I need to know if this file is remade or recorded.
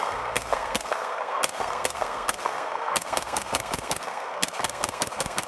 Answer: remade